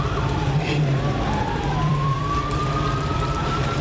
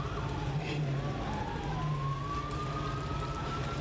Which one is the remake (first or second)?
first